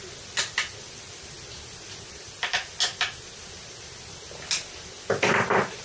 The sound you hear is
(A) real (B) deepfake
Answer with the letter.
A